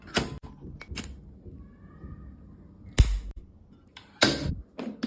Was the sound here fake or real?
real